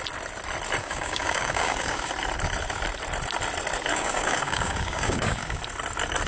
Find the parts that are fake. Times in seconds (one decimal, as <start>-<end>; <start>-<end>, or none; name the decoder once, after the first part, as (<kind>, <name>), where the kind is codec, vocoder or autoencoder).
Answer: 0.8-2.1 (codec, DAC); 3.9-5.6